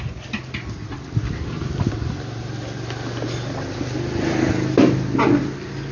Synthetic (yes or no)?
no